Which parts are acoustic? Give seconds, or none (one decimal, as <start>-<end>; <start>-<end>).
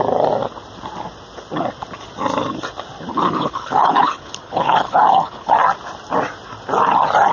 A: 0.0-3.1; 5.5-7.3